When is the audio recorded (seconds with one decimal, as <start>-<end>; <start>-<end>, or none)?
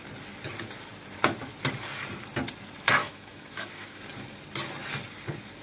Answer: 0.0-3.0; 4.0-5.6